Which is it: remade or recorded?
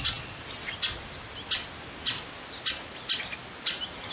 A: recorded